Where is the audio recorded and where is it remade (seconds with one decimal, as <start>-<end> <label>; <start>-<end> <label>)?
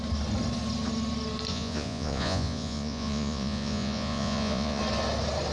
0.0-1.5 recorded; 1.5-4.8 remade; 4.8-5.5 recorded